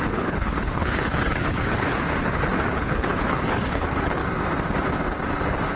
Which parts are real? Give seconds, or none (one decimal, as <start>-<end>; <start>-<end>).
4.2-5.8